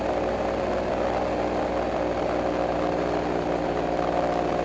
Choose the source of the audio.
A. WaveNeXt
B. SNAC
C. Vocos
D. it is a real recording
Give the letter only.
D